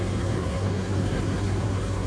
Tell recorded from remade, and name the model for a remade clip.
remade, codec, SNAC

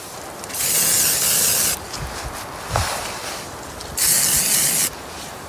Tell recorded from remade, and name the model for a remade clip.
recorded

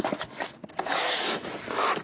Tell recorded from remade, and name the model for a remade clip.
recorded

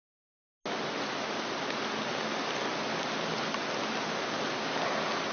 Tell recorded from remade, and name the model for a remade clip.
recorded